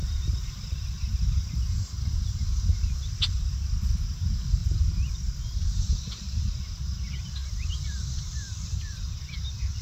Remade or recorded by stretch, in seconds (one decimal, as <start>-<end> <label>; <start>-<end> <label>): 0.0-9.8 recorded